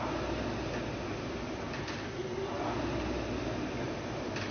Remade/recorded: recorded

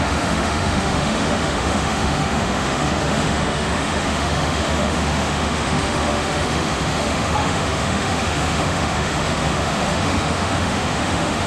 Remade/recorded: remade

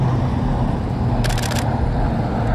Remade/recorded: recorded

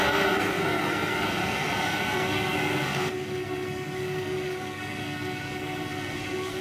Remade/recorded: remade